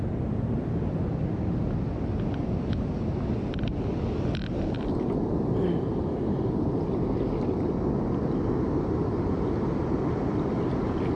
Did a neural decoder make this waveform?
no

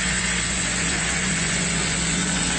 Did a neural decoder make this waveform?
yes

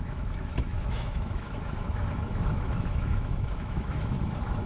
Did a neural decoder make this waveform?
yes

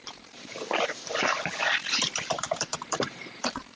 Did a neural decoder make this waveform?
yes